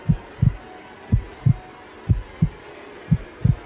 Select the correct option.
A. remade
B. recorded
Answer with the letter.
B